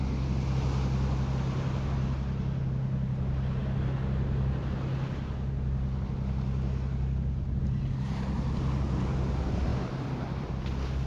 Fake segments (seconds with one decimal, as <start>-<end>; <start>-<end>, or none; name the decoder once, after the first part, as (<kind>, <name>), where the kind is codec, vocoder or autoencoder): 9.7-10.5 (vocoder, BigVGAN v2)